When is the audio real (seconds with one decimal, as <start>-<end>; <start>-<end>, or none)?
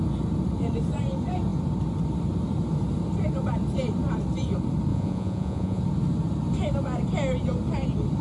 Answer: 0.0-4.9; 5.8-8.2